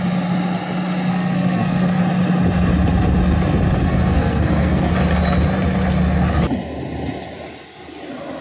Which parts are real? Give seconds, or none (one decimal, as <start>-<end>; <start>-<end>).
0.0-1.1; 2.0-3.8; 4.9-8.4